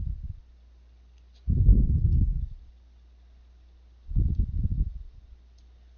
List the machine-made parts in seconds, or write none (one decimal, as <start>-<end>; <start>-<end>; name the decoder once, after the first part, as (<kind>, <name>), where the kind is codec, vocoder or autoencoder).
1.7-2.4 (codec, SNAC)